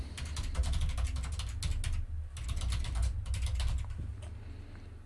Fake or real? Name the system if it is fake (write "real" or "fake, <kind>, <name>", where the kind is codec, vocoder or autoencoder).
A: real